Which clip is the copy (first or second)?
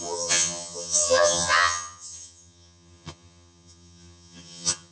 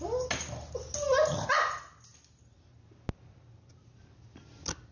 first